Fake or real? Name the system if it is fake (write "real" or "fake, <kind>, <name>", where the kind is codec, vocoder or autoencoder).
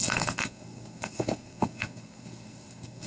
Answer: fake, codec, SNAC